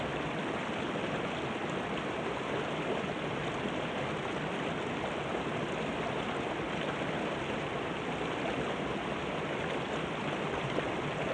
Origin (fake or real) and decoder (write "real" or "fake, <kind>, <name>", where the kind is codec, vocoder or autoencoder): real